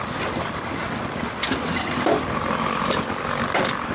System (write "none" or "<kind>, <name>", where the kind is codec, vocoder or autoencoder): none